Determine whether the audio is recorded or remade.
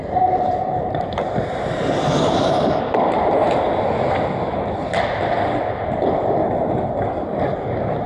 recorded